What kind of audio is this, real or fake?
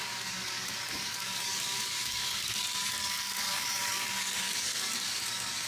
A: fake